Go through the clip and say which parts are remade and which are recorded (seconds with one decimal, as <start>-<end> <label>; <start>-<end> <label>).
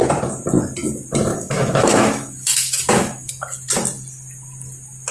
0.0-1.3 recorded; 1.3-3.3 remade; 3.3-5.1 recorded